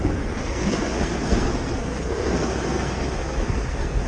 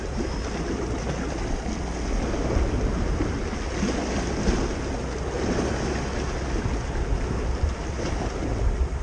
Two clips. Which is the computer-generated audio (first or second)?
first